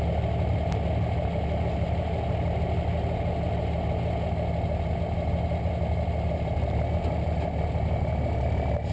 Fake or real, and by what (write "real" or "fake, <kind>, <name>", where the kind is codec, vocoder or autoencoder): real